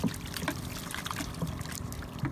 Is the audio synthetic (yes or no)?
no